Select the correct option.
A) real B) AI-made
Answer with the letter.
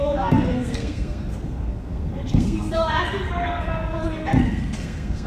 B